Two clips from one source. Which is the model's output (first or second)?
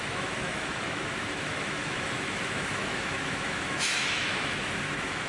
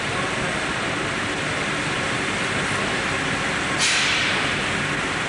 first